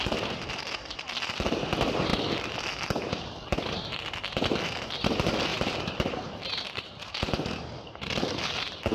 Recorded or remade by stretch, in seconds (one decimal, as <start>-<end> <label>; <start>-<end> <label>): 0.0-5.5 recorded; 5.5-7.2 remade; 7.2-8.9 recorded